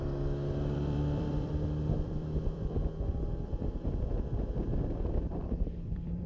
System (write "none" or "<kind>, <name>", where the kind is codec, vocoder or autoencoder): vocoder, BigVGAN v2